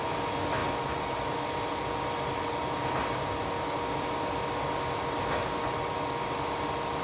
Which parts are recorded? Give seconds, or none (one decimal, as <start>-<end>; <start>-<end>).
0.0-7.0